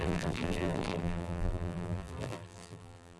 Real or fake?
fake